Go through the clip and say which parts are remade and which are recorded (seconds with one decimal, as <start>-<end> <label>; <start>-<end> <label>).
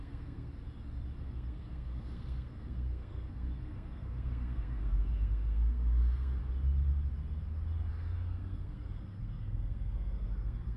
0.0-0.5 remade; 0.5-1.2 recorded; 1.2-6.4 remade; 6.4-7.9 recorded; 7.9-10.8 remade